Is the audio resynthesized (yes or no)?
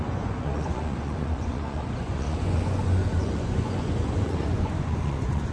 yes